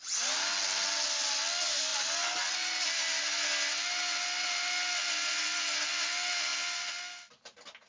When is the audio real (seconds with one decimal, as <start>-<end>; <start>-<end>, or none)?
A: 0.0-7.9